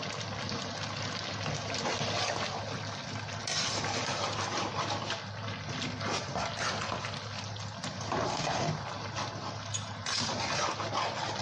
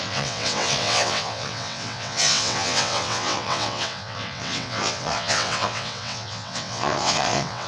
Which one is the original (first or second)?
first